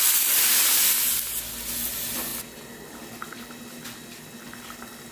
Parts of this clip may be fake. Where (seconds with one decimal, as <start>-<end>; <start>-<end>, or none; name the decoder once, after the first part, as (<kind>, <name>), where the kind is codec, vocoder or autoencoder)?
none